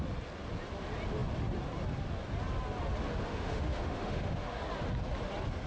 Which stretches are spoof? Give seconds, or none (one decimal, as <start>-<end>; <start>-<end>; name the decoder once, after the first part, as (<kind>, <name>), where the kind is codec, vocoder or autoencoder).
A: 3.3-4.6 (autoencoder, DAC-VAE)